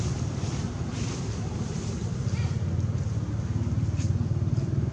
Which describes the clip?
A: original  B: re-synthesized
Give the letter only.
A